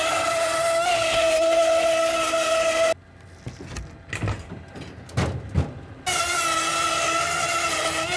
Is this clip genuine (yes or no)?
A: yes